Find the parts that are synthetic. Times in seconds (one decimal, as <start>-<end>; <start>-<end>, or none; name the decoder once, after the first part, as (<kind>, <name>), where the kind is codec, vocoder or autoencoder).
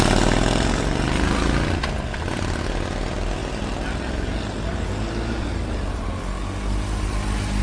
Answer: none